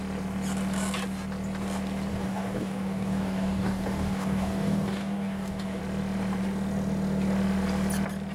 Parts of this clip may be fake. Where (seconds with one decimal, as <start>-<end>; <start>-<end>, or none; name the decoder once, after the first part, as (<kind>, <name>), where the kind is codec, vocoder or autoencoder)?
2.1-5.8 (codec, DAC)